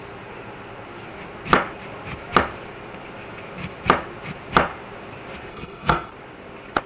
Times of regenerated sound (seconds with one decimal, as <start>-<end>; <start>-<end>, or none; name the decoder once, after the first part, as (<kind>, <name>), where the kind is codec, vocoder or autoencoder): 5.5-6.1 (codec, SNAC)